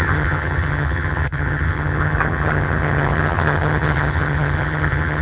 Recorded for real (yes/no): no